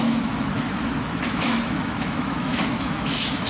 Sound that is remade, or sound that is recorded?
remade